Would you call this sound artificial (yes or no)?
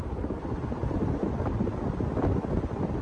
no